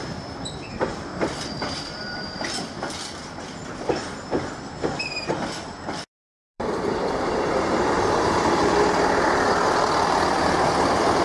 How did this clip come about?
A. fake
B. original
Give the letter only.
A